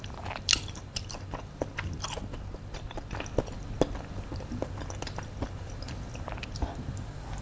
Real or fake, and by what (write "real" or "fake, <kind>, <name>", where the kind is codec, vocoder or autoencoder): real